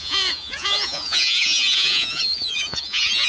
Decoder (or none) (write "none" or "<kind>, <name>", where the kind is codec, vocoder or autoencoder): vocoder, Vocos